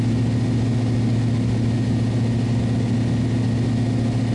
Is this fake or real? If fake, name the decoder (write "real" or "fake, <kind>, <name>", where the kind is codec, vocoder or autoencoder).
real